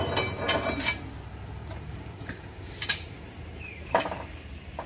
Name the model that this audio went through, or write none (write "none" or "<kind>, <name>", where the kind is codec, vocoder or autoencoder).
vocoder, BigVGAN v2